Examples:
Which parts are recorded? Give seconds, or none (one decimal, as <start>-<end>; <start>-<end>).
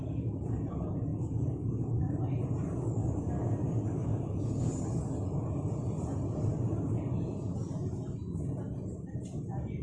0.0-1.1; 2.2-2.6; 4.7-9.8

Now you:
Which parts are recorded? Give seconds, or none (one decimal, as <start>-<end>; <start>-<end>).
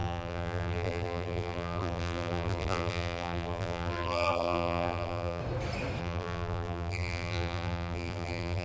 5.4-6.0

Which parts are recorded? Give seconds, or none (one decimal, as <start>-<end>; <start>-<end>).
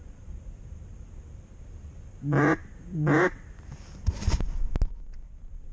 0.0-5.7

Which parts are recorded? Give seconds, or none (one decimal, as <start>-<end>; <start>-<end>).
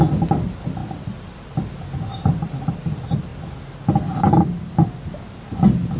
0.0-6.0